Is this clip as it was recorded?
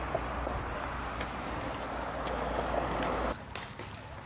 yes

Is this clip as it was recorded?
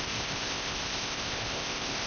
no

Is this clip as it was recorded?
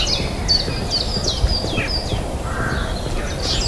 yes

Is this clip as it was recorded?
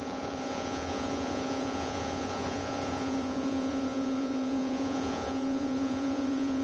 no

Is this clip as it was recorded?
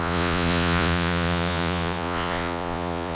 no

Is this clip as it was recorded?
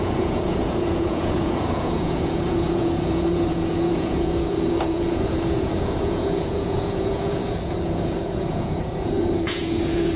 no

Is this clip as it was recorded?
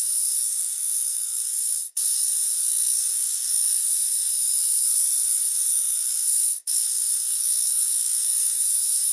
no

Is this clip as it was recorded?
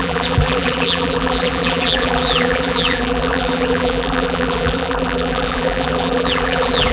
no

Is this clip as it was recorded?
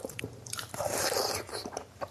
no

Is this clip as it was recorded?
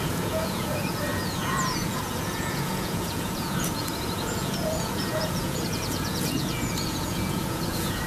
no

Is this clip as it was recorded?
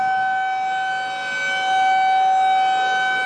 yes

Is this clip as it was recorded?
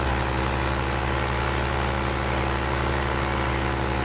yes